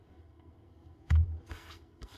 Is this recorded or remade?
remade